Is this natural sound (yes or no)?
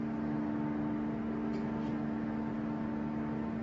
yes